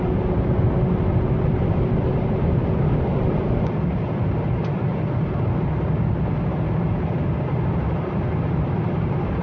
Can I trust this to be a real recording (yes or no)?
yes